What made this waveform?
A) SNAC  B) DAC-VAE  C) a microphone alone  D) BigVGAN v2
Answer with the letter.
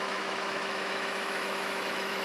B